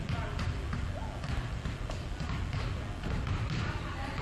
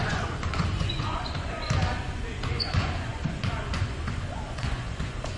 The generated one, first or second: second